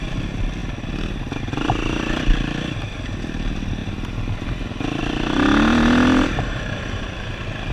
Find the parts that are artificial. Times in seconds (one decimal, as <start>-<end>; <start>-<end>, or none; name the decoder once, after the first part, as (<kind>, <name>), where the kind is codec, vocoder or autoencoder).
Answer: none